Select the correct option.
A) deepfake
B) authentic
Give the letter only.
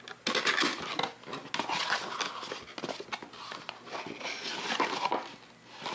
B